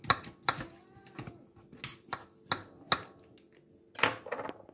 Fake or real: real